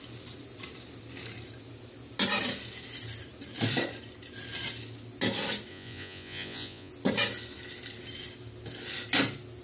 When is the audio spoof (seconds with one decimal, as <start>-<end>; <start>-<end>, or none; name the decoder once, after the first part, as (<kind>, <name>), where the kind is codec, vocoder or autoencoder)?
5.7-6.9 (vocoder, Vocos)